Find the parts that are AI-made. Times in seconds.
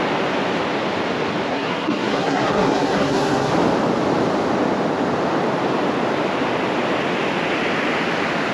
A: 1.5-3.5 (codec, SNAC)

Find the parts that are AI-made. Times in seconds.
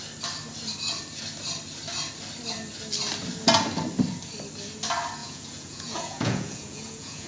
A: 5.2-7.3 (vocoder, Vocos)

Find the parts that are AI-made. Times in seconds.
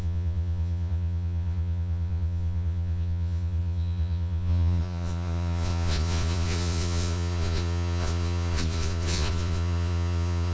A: 0.0-10.5 (vocoder, Vocos)